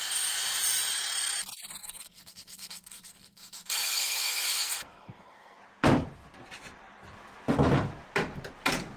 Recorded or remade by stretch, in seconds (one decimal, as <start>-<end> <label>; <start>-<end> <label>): 0.0-1.8 recorded; 1.8-5.6 remade; 5.6-9.0 recorded